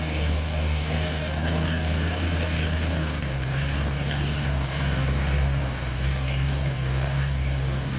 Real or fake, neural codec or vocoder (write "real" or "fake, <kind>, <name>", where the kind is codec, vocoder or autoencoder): fake, codec, DAC